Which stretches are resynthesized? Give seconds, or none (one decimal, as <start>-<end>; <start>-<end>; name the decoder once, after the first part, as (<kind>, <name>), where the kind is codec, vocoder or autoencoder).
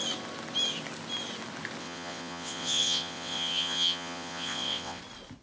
1.8-5.0 (vocoder, WaveNeXt)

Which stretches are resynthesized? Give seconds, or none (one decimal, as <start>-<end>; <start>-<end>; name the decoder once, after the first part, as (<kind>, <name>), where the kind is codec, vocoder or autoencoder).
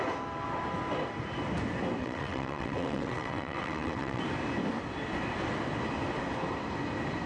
2.0-4.2 (vocoder, WaveNeXt)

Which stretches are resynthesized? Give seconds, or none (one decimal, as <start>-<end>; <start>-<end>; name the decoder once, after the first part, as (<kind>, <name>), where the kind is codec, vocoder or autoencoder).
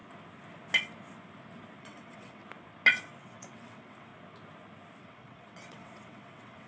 1.8-2.4 (vocoder, WaveNeXt); 3.2-4.1; 5.0-6.7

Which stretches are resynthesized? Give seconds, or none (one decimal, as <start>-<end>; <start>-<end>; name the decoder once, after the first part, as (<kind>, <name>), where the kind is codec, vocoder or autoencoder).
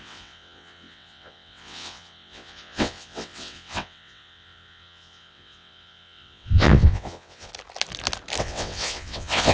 0.0-7.5 (vocoder, WaveNeXt); 8.4-9.5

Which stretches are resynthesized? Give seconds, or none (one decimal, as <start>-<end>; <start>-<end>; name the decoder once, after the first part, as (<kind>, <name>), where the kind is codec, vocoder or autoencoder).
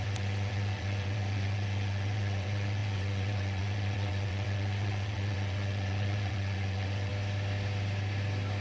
0.0-7.1 (vocoder, WaveNeXt)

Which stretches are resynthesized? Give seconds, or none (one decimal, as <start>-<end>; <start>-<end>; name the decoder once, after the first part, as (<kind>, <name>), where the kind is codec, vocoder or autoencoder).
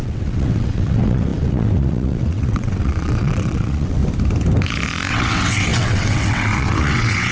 0.0-4.0 (vocoder, WaveNeXt); 5.1-7.3